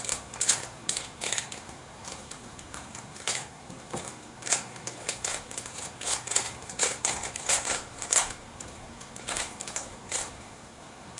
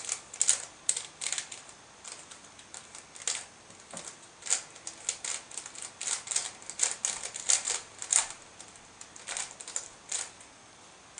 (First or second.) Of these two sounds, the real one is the second